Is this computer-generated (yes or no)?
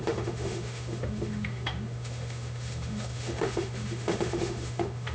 yes